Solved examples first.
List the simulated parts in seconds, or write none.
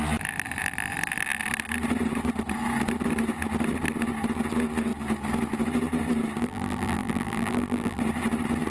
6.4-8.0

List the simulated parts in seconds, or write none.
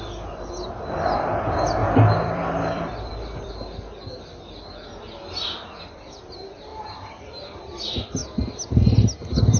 1.8-3.5; 6.7-7.2